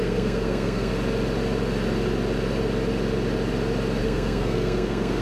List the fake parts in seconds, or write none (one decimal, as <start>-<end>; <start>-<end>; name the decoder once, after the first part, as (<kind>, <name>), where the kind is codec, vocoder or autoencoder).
0.0-0.9 (codec, SNAC); 4.0-5.2